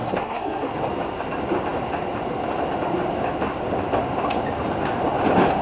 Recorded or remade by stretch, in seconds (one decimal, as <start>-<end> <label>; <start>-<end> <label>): 0.0-0.7 remade; 0.7-5.6 recorded